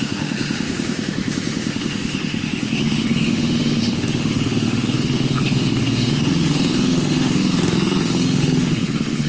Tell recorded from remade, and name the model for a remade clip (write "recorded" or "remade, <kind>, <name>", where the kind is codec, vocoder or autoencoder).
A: remade, autoencoder, DAC-VAE